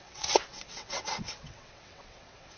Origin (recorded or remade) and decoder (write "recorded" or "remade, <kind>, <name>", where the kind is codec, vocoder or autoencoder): remade, vocoder, WaveNeXt